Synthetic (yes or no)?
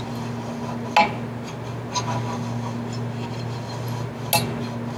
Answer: no